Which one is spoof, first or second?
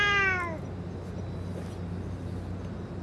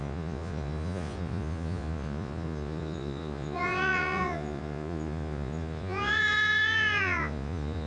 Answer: second